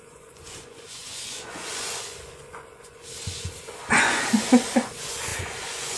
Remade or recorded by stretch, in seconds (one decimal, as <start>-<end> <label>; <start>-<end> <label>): 0.0-6.0 remade